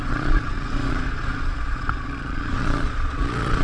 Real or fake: fake